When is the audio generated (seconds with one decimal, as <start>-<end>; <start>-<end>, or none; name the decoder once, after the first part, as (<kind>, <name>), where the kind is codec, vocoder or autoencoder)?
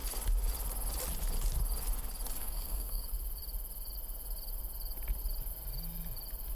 2.4-3.0 (codec, SNAC)